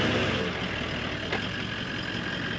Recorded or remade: recorded